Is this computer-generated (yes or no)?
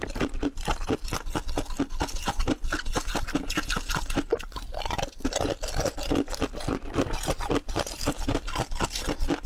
no